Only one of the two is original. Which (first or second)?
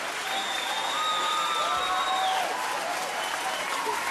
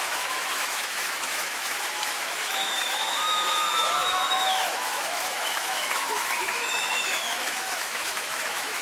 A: first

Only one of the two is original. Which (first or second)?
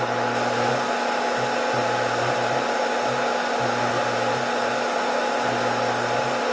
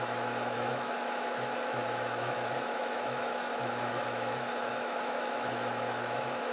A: first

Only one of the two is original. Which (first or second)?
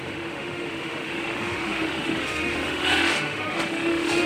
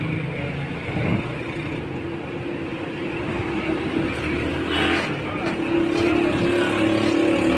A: second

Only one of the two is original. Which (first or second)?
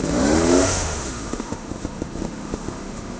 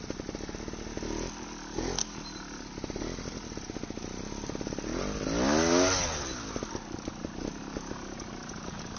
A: second